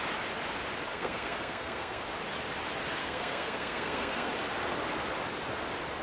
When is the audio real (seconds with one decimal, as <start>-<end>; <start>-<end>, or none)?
0.0-0.9; 2.0-3.0; 4.3-6.0

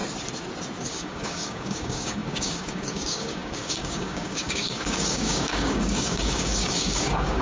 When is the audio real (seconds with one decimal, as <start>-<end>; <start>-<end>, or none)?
0.0-0.9

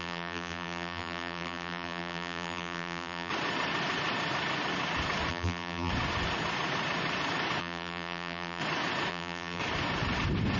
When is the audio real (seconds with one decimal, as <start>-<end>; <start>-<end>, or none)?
3.3-5.3; 5.9-7.6; 8.6-9.1; 9.6-10.6

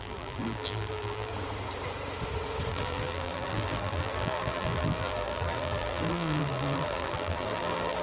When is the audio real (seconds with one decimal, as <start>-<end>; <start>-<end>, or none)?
1.3-2.7

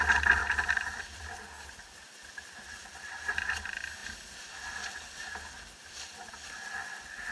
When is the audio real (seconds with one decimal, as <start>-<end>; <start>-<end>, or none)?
0.0-7.3

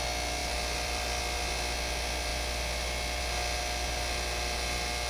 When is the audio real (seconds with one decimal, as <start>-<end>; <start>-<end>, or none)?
0.0-0.4; 1.2-5.1

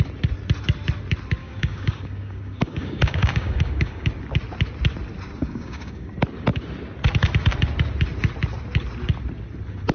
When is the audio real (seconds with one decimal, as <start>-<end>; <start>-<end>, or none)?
0.0-1.4; 4.1-5.4; 6.1-9.9

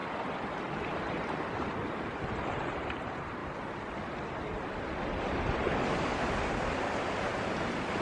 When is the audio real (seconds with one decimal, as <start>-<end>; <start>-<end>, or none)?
0.0-1.9; 3.4-8.0